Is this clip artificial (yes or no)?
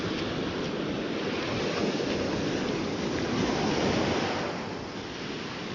no